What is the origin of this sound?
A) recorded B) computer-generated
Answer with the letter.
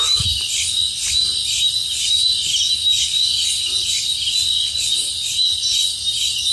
A